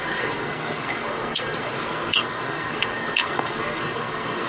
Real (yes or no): no